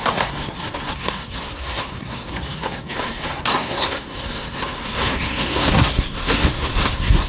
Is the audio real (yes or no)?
no